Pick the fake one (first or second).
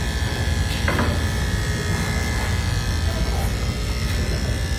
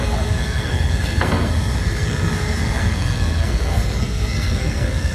second